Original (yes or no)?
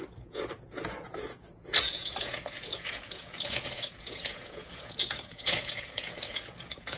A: no